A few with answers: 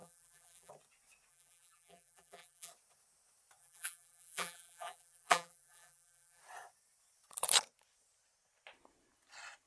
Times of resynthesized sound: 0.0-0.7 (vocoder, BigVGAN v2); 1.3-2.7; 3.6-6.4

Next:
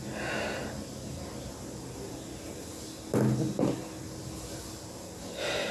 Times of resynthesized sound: none

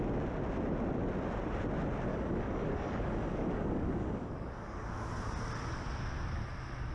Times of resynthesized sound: 2.1-5.1 (codec, DAC)

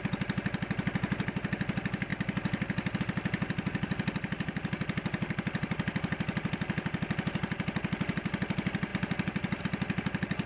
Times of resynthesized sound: 8.9-9.6 (vocoder, BigVGAN v2)